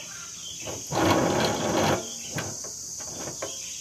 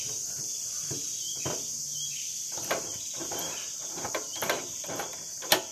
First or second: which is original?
first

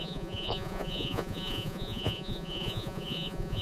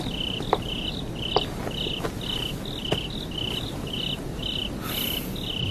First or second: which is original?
second